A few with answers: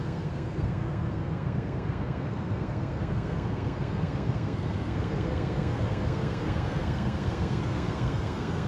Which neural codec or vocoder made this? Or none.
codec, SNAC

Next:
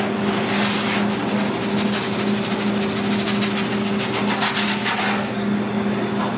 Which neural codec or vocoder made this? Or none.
none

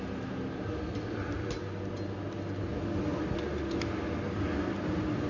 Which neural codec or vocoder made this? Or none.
none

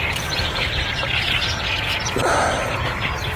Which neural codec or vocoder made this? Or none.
none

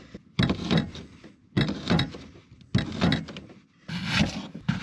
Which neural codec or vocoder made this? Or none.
none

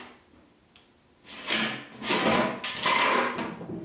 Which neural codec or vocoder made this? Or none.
none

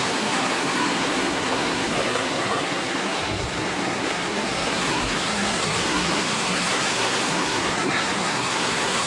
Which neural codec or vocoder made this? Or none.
codec, SNAC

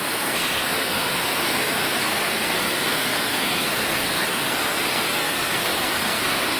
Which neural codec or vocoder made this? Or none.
codec, SNAC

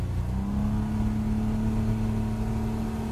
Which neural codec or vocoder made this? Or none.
none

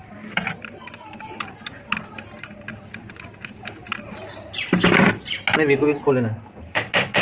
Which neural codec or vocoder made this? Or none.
none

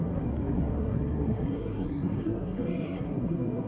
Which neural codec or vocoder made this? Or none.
codec, SNAC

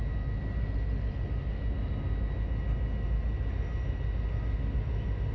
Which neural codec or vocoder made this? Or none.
none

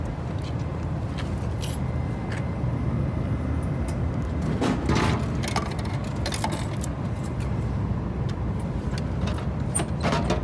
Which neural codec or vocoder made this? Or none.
none